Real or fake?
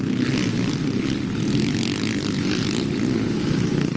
real